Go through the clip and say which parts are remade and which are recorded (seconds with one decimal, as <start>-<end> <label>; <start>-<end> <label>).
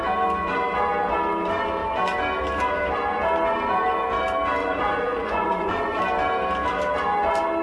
0.0-4.6 recorded; 4.6-6.0 remade; 6.0-7.6 recorded